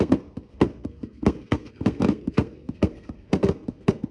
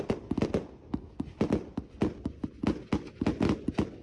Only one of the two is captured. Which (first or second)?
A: second